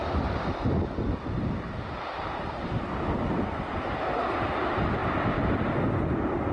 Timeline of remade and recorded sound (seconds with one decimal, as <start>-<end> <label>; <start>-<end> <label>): 0.0-5.0 remade; 5.0-5.7 recorded; 5.7-6.5 remade

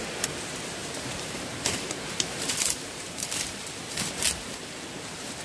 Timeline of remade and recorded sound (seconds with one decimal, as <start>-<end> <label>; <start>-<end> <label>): 0.0-0.8 recorded; 0.8-4.0 remade; 4.0-5.4 recorded

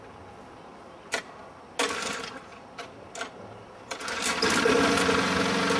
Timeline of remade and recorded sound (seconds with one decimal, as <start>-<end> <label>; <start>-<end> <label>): 0.0-0.7 recorded; 0.7-1.2 remade; 1.2-5.8 recorded

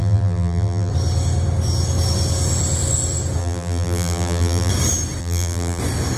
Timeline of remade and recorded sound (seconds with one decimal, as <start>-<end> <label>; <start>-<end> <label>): 0.0-0.9 remade; 0.9-3.4 recorded; 3.4-4.7 remade; 4.7-5.2 recorded; 5.2-5.8 remade; 5.8-6.2 recorded

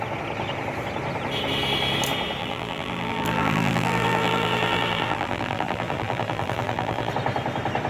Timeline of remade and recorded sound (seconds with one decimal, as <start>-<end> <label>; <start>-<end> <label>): 0.0-2.4 recorded; 2.4-7.1 remade; 7.1-7.9 recorded